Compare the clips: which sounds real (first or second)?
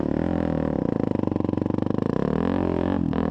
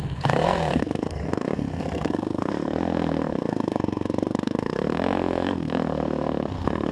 first